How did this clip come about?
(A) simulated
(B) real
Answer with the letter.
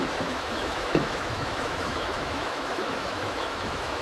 A